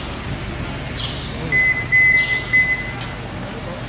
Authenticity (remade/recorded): recorded